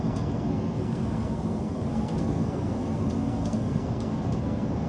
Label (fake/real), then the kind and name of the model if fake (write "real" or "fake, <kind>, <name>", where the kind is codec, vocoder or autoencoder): fake, codec, SNAC